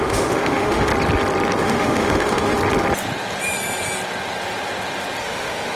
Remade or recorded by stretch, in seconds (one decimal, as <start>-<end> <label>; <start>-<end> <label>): 0.0-0.9 remade; 0.9-1.6 recorded; 1.6-2.6 remade; 2.6-5.2 recorded; 5.2-5.8 remade